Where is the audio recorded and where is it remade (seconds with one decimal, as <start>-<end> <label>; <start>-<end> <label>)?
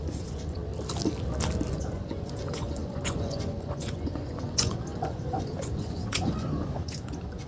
0.0-0.7 remade; 0.7-1.7 recorded; 1.7-7.5 remade